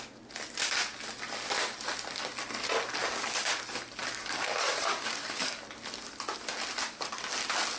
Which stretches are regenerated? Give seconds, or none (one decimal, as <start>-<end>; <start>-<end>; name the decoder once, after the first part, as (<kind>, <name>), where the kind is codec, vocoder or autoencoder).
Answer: 3.0-3.6 (codec, DAC); 4.0-5.6